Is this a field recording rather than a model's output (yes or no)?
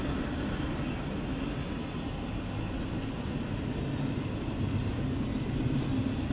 yes